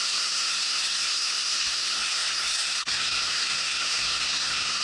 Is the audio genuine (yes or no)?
no